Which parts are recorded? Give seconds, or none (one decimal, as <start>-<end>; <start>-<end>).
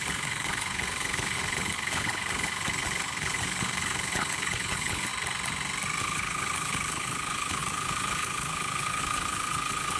5.1-6.0